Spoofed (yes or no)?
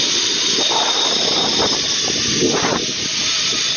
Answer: yes